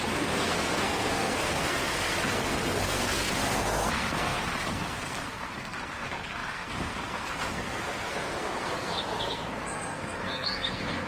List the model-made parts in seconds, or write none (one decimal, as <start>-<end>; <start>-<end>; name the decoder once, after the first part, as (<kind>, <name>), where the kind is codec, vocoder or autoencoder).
0.0-11.1 (codec, SNAC)